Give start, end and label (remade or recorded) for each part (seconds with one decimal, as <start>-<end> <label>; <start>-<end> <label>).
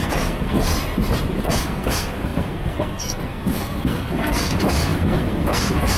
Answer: 0.0-0.7 remade; 0.7-1.4 recorded; 1.4-6.0 remade